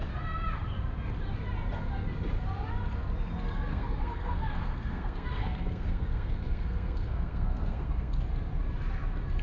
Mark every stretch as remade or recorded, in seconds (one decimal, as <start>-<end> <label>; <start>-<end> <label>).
0.0-3.7 recorded; 3.7-8.2 remade; 8.2-9.4 recorded